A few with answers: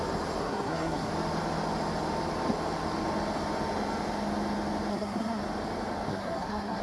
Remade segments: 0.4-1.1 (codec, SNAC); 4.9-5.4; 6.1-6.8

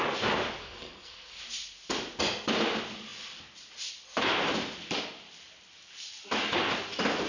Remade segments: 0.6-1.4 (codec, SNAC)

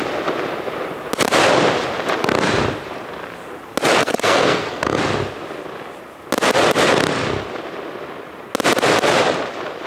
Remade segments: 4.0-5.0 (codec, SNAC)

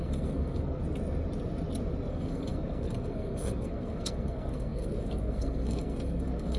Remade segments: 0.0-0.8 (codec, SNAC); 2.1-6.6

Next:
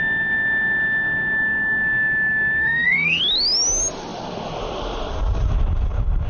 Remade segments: 2.6-3.2 (codec, SNAC)

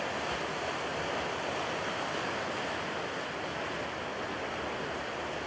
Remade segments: none

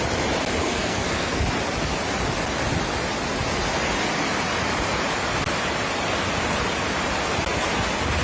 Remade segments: 0.6-1.4 (codec, SNAC)

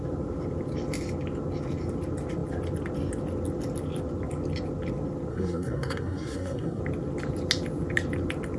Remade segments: 5.3-6.8 (codec, SNAC)